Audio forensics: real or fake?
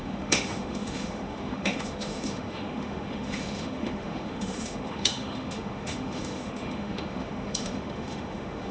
fake